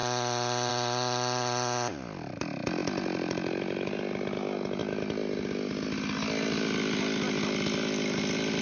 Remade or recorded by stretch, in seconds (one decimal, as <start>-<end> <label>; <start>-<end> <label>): 0.0-8.6 recorded